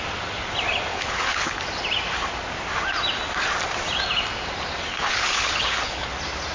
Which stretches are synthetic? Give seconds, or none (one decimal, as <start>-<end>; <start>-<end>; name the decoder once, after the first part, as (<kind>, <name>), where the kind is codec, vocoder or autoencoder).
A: 0.9-1.5 (codec, HILCodec); 4.9-6.1